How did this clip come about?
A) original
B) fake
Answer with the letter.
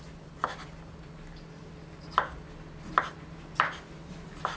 A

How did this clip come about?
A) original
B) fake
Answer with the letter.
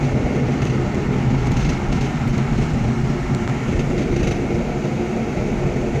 A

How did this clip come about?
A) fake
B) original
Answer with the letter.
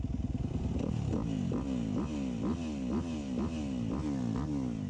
B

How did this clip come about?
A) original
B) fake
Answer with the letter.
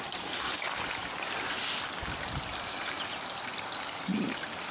A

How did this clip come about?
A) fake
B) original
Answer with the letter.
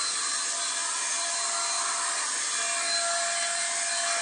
B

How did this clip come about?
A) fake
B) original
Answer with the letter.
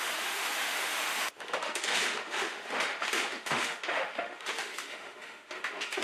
A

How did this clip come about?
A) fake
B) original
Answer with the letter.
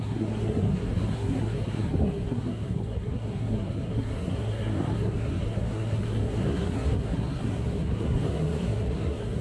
A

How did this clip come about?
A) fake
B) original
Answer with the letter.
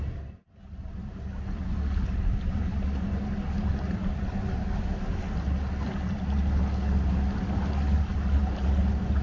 B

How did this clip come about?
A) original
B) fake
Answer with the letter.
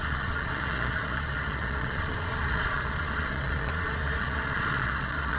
B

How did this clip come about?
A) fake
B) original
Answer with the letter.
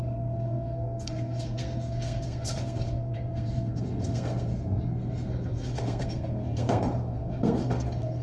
A